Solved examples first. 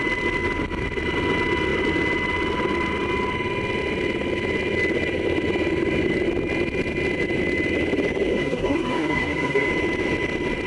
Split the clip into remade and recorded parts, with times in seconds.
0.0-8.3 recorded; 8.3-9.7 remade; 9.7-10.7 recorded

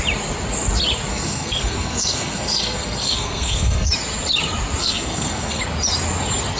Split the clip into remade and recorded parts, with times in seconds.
0.0-1.1 recorded; 1.1-3.9 remade; 3.9-4.8 recorded; 4.8-5.6 remade; 5.6-6.6 recorded

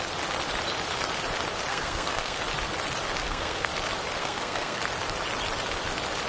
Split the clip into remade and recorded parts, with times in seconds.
0.0-1.7 recorded; 1.7-2.4 remade; 2.4-3.2 recorded; 3.2-3.7 remade; 3.7-4.2 recorded; 4.2-4.8 remade; 4.8-6.3 recorded

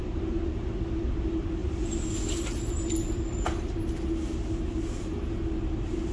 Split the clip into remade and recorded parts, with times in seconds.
0.0-6.1 recorded

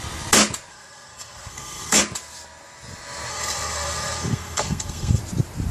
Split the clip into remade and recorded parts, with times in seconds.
0.0-0.7 recorded; 0.7-2.0 remade; 2.0-3.3 recorded; 3.3-5.2 remade; 5.2-5.7 recorded

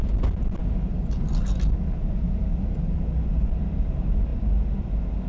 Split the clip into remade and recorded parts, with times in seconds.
0.0-5.3 recorded